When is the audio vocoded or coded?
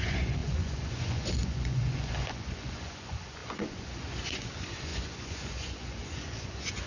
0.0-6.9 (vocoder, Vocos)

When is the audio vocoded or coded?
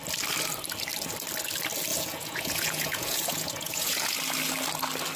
1.9-4.1 (vocoder, Vocos)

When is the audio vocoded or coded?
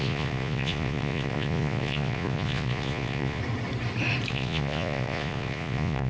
0.0-3.4 (vocoder, Vocos); 4.3-6.1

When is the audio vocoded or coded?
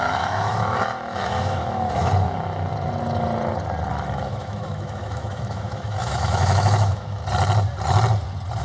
0.0-2.1 (autoencoder, DAC-VAE); 3.9-7.2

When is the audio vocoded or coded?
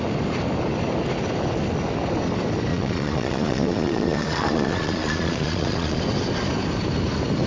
2.7-6.0 (vocoder, Vocos)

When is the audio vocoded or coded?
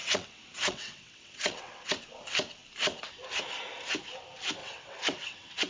0.0-1.9 (vocoder, WaveNeXt); 4.6-5.7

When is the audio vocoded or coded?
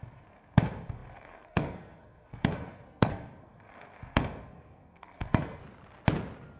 0.0-5.6 (codec, SNAC)